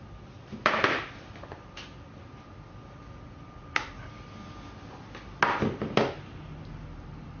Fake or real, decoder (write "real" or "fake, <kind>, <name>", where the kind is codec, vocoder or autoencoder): real